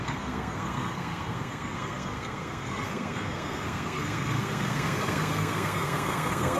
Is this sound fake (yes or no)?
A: yes